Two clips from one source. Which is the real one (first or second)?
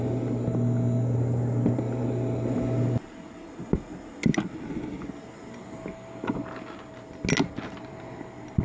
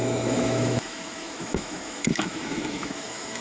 first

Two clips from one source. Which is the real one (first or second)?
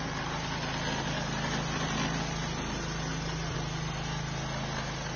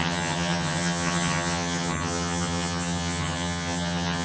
first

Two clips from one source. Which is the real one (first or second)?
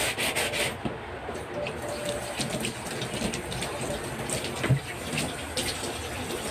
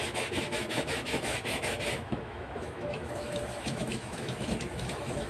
first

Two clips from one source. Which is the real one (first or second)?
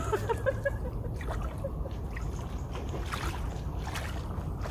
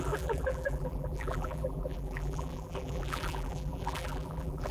first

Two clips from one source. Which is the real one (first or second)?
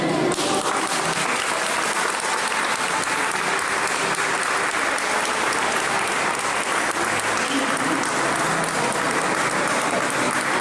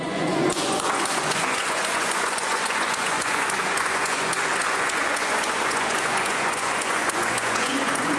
first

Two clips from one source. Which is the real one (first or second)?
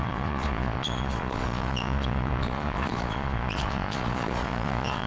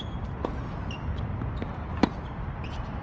second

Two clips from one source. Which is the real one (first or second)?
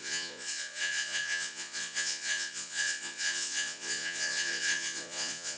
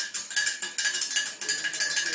second